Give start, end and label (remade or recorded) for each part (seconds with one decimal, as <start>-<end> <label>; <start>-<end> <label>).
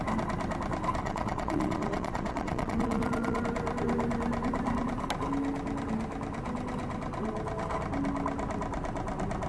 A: 0.0-1.0 recorded; 1.0-3.4 remade; 3.4-9.5 recorded